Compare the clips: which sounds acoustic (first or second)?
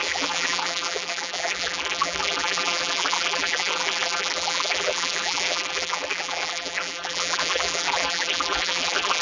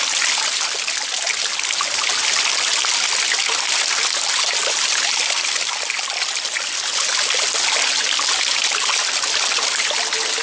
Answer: second